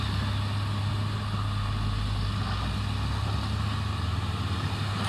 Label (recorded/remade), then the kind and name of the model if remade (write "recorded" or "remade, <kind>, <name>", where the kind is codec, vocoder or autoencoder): recorded